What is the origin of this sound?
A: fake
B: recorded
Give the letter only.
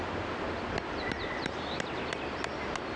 B